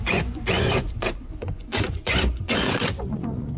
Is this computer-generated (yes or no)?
yes